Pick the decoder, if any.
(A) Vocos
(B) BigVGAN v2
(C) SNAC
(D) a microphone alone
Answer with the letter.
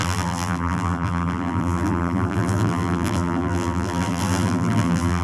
B